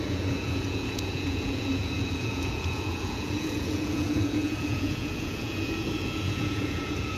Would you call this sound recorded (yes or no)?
no